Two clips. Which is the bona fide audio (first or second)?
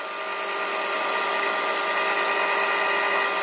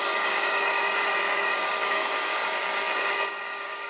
first